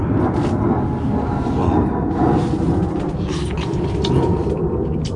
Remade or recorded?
recorded